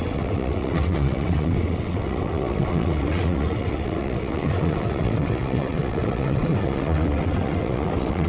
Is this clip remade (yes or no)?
yes